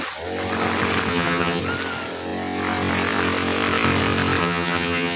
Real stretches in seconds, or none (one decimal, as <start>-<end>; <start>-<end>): 0.0-1.1; 1.6-4.4